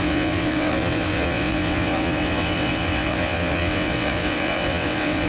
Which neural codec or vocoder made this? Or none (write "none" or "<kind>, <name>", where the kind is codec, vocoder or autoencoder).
vocoder, WaveNeXt